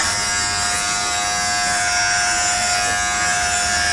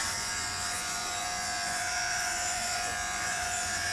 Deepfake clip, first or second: second